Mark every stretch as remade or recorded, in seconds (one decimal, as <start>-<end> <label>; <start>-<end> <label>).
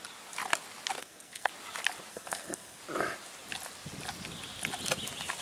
0.0-1.0 recorded; 1.0-1.5 remade; 1.5-2.1 recorded; 2.1-2.8 remade; 2.8-5.4 recorded